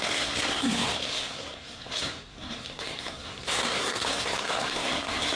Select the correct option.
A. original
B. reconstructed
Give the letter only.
B